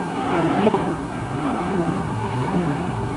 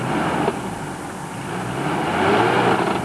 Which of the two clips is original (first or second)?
second